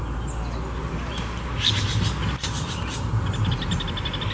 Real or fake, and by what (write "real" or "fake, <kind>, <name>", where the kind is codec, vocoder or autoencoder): real